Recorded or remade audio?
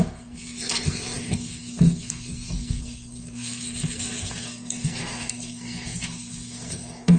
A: remade